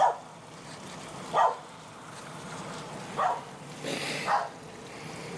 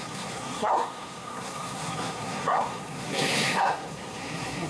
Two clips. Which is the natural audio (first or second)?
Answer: first